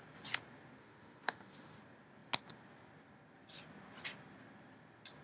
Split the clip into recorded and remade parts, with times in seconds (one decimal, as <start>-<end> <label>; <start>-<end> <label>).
0.0-0.8 recorded; 0.8-1.8 remade; 1.8-5.2 recorded